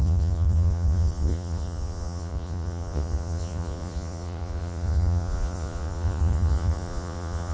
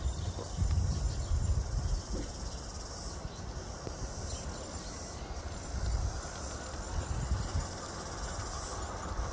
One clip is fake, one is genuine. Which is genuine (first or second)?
second